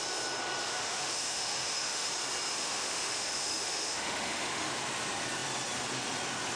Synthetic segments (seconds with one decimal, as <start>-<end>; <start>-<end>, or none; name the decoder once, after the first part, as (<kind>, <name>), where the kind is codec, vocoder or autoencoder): 0.7-2.1 (autoencoder, DAC-VAE); 2.5-4.7